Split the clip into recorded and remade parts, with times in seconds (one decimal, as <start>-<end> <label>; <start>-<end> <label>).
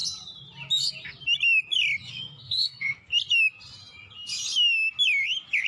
0.0-2.1 recorded; 2.1-3.1 remade; 3.1-5.7 recorded